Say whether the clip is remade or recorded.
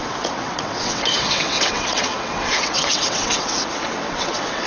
remade